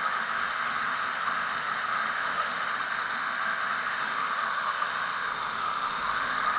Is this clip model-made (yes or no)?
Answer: yes